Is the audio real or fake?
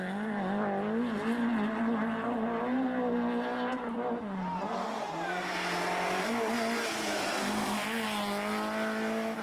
real